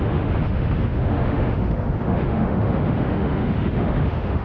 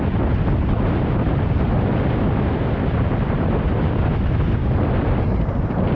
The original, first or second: second